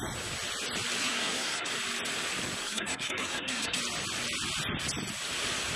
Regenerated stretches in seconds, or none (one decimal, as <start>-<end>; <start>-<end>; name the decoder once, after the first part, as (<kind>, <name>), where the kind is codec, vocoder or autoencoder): 1.0-1.7 (codec, SNAC); 2.6-3.8